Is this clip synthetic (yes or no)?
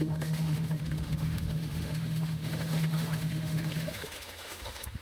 yes